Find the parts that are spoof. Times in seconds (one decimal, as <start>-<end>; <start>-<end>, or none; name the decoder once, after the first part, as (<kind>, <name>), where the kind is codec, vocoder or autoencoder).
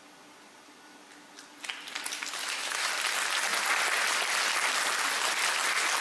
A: 2.4-2.9 (autoencoder, DAC-VAE)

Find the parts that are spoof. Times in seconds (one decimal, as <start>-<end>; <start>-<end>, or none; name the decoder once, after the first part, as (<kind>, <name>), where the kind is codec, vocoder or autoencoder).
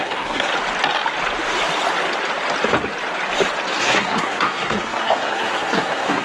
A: 0.0-0.5 (codec, SNAC); 3.8-6.2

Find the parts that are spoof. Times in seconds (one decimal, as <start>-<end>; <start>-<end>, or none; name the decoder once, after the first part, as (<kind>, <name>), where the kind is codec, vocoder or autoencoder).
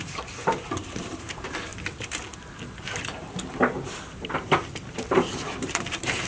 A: 0.0-1.7 (vocoder, BigVGAN v2); 5.1-6.3